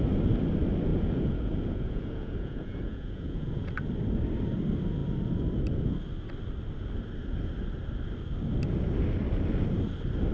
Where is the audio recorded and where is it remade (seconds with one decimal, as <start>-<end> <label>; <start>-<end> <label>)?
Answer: 0.0-0.9 recorded; 0.9-3.7 remade; 3.7-10.3 recorded